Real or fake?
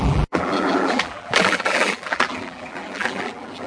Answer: fake